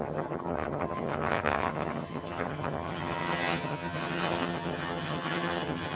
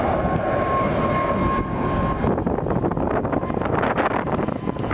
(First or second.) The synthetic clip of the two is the first